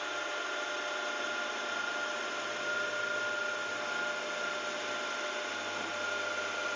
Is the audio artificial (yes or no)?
no